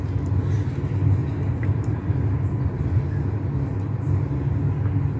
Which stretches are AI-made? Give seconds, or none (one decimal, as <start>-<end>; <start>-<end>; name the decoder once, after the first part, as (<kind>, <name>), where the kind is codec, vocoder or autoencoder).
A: 1.2-4.3 (vocoder, BigVGAN v2)